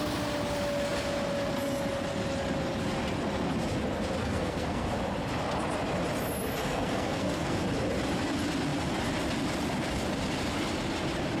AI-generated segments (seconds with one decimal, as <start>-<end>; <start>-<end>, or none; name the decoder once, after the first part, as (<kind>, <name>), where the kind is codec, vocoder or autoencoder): 4.2-4.9 (codec, SNAC); 6.6-7.6